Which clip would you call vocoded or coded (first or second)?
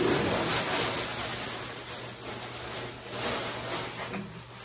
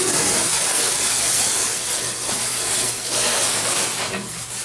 second